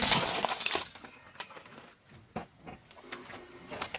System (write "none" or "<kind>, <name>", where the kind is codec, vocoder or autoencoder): none